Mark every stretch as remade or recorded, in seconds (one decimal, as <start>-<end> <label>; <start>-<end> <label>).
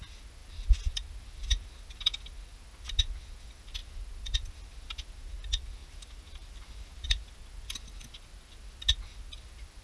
0.0-5.8 recorded; 5.8-7.2 remade; 7.2-9.8 recorded